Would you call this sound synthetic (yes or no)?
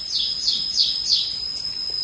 no